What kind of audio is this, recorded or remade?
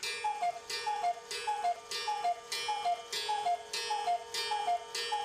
recorded